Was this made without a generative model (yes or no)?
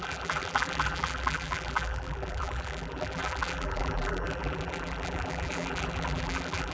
no